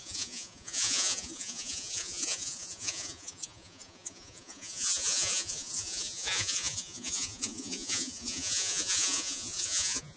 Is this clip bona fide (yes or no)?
no